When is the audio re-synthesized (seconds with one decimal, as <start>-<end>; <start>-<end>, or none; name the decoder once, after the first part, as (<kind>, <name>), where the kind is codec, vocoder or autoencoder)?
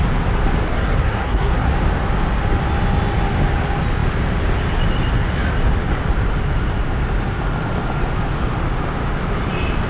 0.7-1.7 (codec, SNAC)